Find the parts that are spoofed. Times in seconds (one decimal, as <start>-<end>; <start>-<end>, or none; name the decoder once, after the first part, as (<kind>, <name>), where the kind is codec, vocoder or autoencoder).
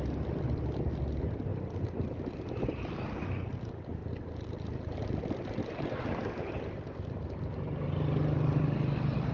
none